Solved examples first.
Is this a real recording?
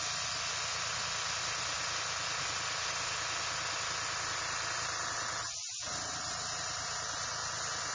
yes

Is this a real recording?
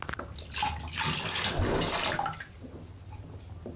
yes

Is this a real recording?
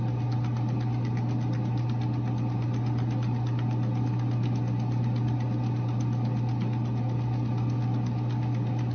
yes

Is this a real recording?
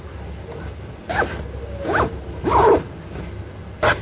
yes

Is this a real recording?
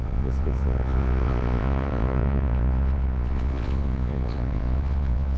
no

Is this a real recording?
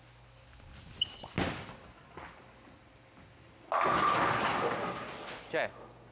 yes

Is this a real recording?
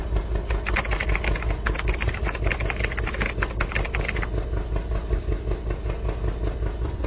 yes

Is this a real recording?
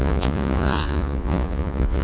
no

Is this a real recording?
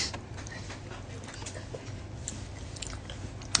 yes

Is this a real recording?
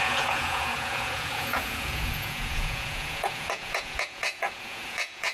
no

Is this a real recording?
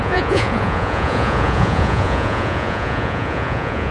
no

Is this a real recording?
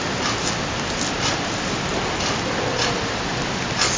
yes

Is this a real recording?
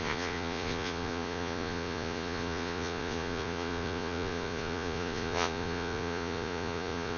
no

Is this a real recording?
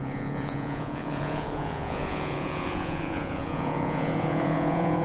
no